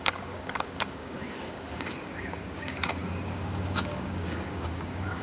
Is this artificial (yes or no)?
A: yes